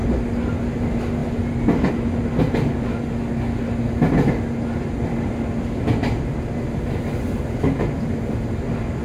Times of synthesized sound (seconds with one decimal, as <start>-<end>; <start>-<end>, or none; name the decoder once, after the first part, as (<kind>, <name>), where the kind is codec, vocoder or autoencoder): none